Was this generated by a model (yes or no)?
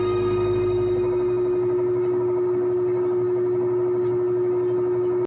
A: no